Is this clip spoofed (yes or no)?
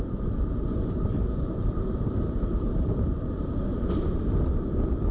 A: yes